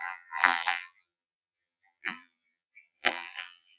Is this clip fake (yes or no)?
yes